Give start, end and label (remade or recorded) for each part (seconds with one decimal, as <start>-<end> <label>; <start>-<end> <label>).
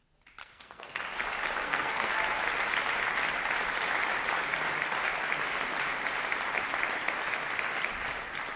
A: 0.0-0.4 recorded; 0.4-1.0 remade; 1.0-1.6 recorded; 1.6-2.1 remade; 2.1-8.6 recorded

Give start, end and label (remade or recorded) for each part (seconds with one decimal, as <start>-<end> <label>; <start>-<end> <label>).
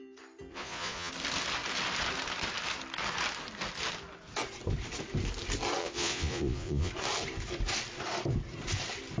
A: 0.0-0.5 recorded; 0.5-1.1 remade; 1.1-5.8 recorded; 5.8-6.9 remade; 6.9-9.2 recorded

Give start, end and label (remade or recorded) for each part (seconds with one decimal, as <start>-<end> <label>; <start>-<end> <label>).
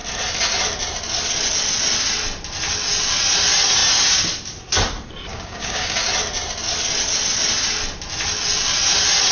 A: 0.0-5.3 recorded; 5.3-6.0 remade; 6.0-9.3 recorded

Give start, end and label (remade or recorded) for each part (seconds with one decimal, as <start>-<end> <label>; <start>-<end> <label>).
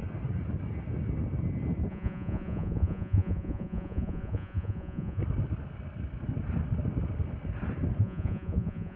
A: 0.0-1.9 recorded; 1.9-5.2 remade; 5.2-8.0 recorded; 8.0-9.0 remade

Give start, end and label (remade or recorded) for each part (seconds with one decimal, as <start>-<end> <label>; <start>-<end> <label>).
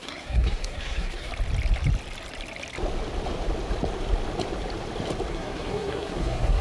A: 0.0-1.3 remade; 1.3-5.3 recorded; 5.3-6.6 remade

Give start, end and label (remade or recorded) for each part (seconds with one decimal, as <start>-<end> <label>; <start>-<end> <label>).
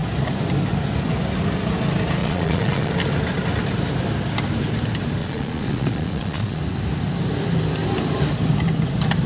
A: 0.0-2.2 recorded; 2.2-2.9 remade; 2.9-5.2 recorded; 5.2-6.6 remade; 6.6-9.3 recorded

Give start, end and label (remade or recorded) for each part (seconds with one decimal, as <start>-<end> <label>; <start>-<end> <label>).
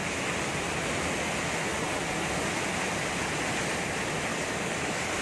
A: 0.0-4.3 recorded; 4.3-5.2 remade